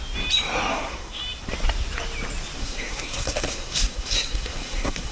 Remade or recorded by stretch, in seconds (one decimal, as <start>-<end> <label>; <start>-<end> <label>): 0.0-0.7 recorded; 0.7-1.2 remade; 1.2-2.6 recorded; 2.6-5.1 remade